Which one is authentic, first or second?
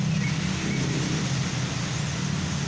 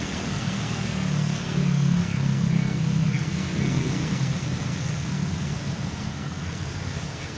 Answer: first